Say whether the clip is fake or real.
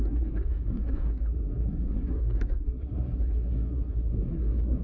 fake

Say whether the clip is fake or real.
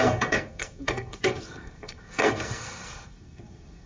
fake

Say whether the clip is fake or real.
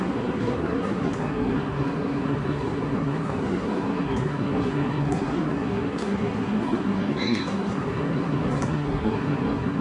fake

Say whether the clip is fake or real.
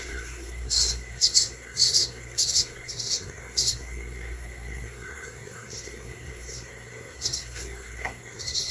fake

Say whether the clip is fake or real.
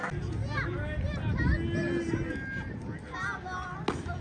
real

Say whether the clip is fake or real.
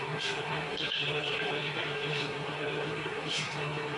fake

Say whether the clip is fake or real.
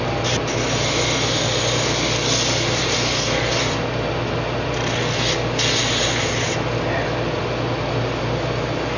real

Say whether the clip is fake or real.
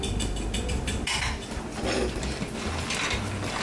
real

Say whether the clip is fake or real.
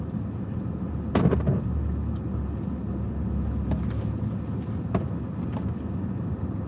real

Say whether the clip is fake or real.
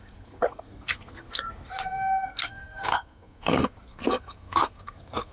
fake